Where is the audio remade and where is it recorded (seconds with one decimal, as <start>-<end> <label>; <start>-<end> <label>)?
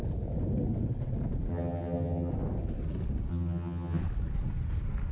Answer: 0.0-1.5 recorded; 1.5-2.3 remade; 2.3-3.3 recorded; 3.3-4.0 remade; 4.0-5.1 recorded